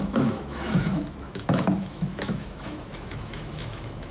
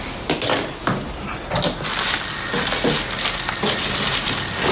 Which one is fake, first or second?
first